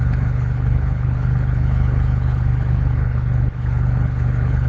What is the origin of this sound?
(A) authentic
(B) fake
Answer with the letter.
B